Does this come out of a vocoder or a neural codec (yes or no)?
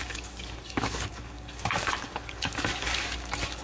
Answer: yes